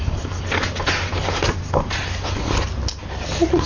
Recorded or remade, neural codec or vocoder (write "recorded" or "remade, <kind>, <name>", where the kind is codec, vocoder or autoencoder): recorded